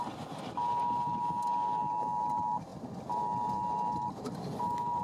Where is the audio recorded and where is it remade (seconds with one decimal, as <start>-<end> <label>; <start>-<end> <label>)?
0.0-5.0 recorded

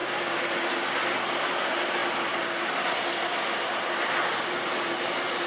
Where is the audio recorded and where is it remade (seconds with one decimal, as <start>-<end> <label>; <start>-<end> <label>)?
0.0-5.5 recorded